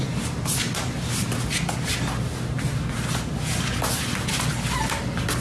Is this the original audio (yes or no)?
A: yes